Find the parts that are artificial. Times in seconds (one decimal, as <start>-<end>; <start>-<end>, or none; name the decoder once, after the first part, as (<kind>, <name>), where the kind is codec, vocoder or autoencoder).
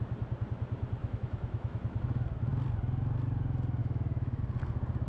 1.0-1.8 (autoencoder, DAC-VAE); 3.8-4.4